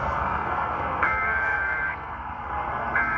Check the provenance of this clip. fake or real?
fake